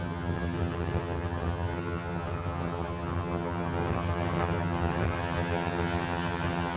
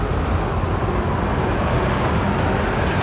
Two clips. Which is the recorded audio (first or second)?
second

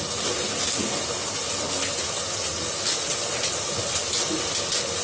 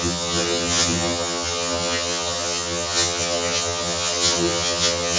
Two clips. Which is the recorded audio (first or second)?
first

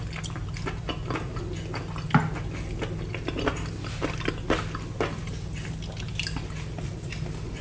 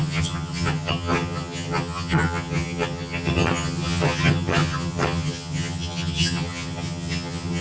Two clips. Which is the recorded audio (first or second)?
first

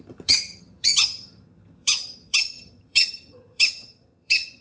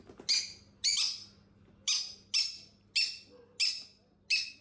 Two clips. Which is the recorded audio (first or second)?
second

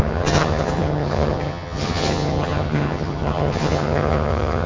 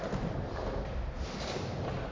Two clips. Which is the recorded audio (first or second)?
second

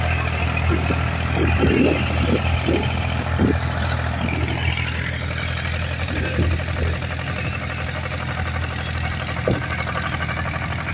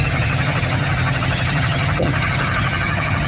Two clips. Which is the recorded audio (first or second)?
first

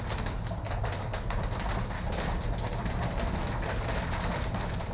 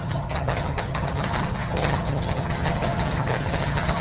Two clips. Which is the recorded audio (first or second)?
first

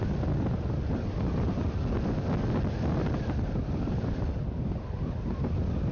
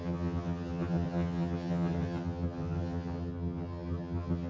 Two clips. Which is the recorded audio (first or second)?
first